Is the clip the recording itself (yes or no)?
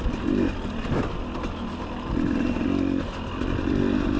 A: yes